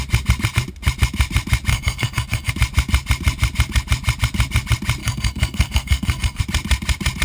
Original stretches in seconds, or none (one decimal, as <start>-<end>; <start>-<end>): 0.0-1.7; 2.5-5.0; 6.4-7.2